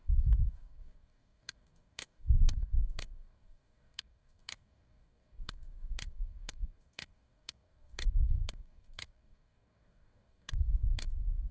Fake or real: fake